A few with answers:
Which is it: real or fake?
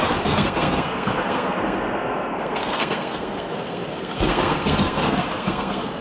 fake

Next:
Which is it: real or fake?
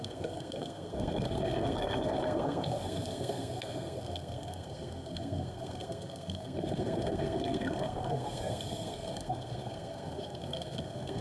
fake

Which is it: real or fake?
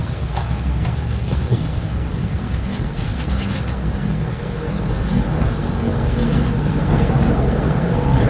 fake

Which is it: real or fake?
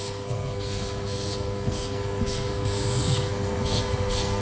fake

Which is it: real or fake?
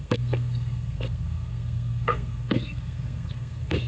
fake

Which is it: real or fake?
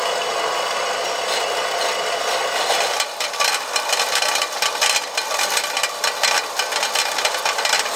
real